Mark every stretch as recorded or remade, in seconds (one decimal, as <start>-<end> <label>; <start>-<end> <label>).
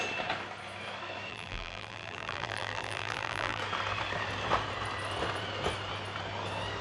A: 0.0-1.3 recorded; 1.3-3.6 remade; 3.6-6.8 recorded